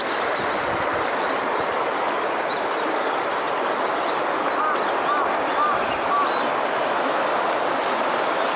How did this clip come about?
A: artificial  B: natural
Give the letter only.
B